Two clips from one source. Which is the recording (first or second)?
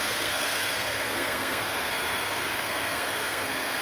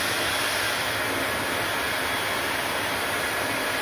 second